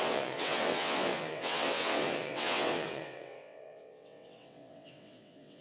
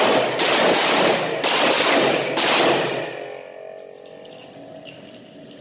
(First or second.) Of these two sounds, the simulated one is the first